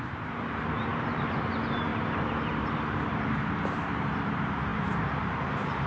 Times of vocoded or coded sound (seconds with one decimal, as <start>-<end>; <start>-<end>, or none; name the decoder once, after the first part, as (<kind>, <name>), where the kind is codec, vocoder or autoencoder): 0.0-1.9 (vocoder, BigVGAN v2); 3.1-5.9